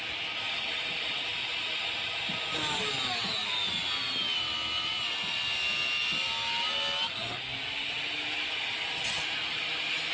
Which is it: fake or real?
real